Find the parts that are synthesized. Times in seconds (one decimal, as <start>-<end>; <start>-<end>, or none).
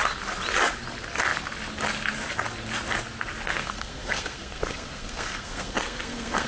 3.6-6.5